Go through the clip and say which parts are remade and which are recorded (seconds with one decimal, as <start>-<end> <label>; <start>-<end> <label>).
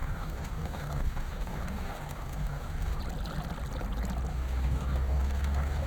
0.0-3.0 remade; 3.0-4.3 recorded; 4.3-5.9 remade